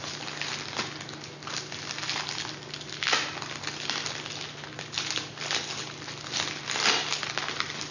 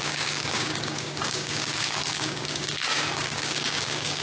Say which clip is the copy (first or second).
second